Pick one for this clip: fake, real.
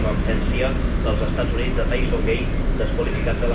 real